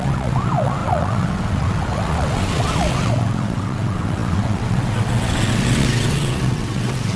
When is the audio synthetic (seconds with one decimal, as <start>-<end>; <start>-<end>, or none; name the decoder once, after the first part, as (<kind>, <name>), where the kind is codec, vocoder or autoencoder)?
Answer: 0.0-7.2 (vocoder, WaveNeXt)